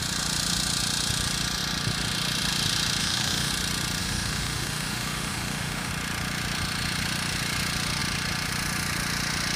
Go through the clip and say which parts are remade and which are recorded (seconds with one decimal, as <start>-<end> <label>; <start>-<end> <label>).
0.0-3.0 recorded; 3.0-3.5 remade; 3.5-4.0 recorded; 4.0-5.9 remade; 5.9-9.6 recorded